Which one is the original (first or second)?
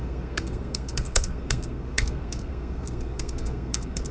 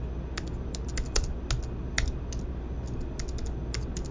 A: second